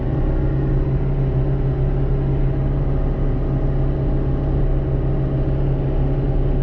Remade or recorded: recorded